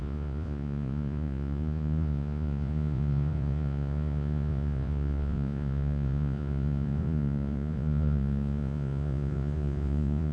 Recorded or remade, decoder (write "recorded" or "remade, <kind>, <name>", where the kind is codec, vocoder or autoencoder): remade, vocoder, Vocos